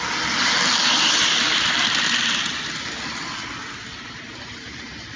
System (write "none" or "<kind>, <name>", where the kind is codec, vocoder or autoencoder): none